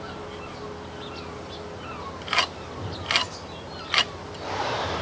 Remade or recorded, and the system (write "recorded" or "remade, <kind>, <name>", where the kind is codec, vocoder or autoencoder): recorded